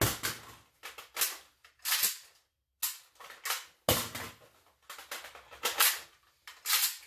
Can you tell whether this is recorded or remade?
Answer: recorded